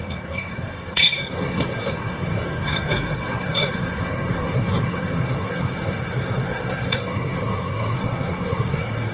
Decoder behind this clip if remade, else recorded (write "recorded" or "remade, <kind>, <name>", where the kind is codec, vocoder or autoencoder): remade, codec, SNAC